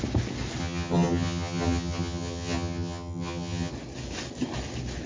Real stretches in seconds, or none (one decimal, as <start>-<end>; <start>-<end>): 0.0-0.6; 3.7-5.1